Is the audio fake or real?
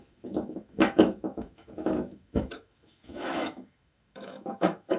fake